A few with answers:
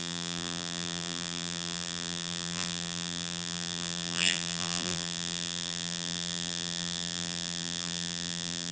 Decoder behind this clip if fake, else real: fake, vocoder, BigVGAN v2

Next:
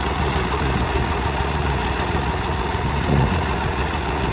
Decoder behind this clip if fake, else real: fake, vocoder, Vocos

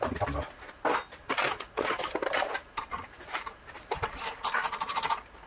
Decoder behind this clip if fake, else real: fake, vocoder, BigVGAN v2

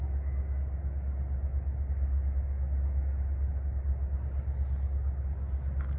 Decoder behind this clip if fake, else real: real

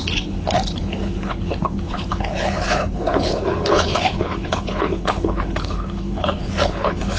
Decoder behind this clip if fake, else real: fake, codec, HILCodec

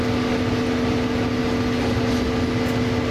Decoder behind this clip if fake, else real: real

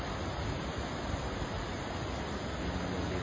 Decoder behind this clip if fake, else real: real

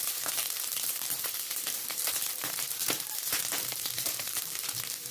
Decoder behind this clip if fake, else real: fake, vocoder, BigVGAN v2